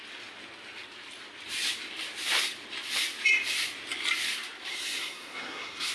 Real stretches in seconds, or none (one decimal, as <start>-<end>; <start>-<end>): 0.0-4.7